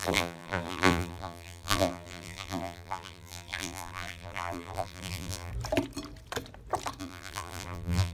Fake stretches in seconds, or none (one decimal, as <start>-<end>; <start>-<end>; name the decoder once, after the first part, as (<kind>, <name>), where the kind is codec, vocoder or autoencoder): 0.0-5.5 (vocoder, BigVGAN v2); 7.0-8.1